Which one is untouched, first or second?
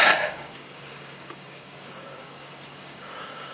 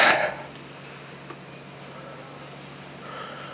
second